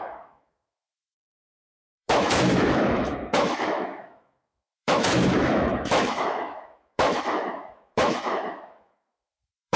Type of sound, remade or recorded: remade